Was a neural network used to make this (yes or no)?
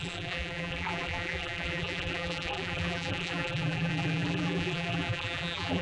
yes